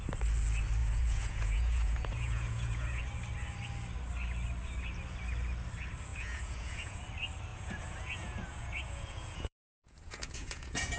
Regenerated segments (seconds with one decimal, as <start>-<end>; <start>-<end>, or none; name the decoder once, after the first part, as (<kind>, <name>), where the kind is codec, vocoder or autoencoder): 0.8-3.0 (vocoder, Vocos); 6.1-7.0; 7.5-11.0